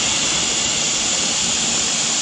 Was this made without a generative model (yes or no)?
yes